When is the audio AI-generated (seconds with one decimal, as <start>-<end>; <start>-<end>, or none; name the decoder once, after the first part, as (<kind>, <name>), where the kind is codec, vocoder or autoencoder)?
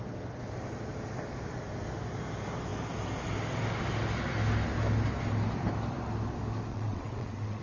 6.7-7.6 (vocoder, WaveNeXt)